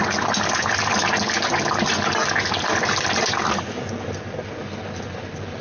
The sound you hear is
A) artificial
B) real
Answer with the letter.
B